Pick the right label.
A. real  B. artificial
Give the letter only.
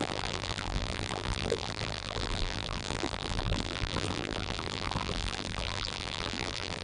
B